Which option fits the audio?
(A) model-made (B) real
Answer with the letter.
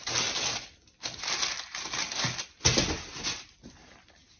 B